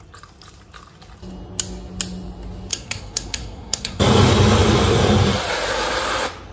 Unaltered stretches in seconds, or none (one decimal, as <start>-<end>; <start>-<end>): 0.0-2.7; 4.0-6.5

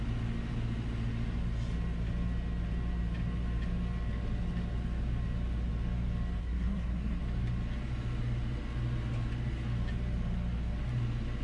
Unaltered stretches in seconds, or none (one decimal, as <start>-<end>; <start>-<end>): 0.0-6.4; 7.2-11.4

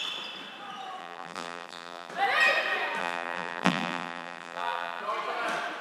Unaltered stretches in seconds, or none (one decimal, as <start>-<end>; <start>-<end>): 0.0-1.0; 2.1-3.0; 5.0-5.8